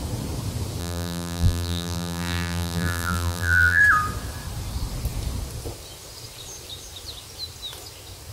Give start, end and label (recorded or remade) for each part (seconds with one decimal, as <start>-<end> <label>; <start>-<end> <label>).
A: 0.0-0.8 recorded; 0.8-3.8 remade; 3.8-8.3 recorded